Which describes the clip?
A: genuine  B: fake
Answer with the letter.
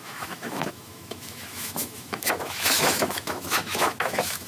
B